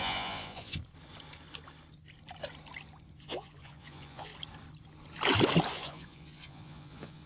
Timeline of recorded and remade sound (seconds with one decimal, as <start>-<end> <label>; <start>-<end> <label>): 0.0-0.8 remade; 0.8-3.2 recorded; 3.2-4.3 remade; 4.3-5.7 recorded; 5.7-7.3 remade